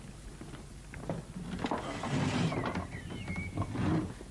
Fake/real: real